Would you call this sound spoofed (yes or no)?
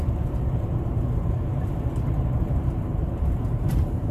yes